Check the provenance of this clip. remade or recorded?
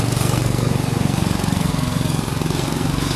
remade